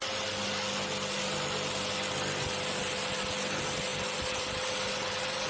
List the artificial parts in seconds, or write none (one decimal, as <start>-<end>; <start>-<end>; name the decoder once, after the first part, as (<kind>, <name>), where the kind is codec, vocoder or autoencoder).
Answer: none